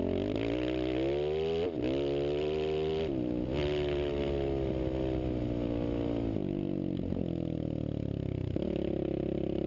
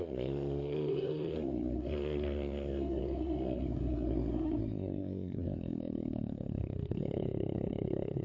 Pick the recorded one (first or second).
first